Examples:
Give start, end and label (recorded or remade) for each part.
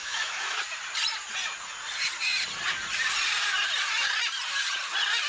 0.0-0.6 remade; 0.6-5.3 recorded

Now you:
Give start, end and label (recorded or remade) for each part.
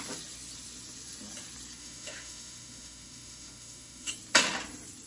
0.0-1.8 recorded; 1.8-4.1 remade; 4.1-5.1 recorded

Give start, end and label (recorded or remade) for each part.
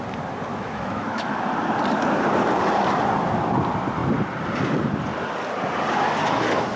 0.0-0.5 recorded; 0.5-1.4 remade; 1.4-6.8 recorded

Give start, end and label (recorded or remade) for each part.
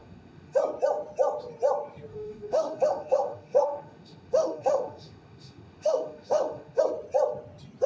0.0-0.6 remade; 0.6-2.1 recorded; 2.1-6.8 remade; 6.8-7.9 recorded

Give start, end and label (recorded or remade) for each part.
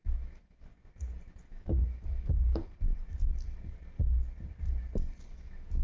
0.0-0.7 remade; 0.7-1.4 recorded; 1.4-2.5 remade; 2.5-5.3 recorded; 5.3-5.8 remade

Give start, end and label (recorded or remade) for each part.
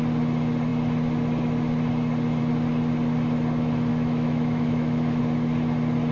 0.0-3.9 recorded; 3.9-5.2 remade; 5.2-6.1 recorded